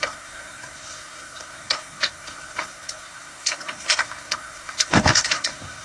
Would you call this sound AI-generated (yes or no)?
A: yes